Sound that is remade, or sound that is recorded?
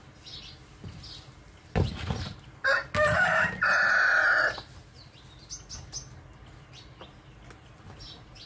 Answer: recorded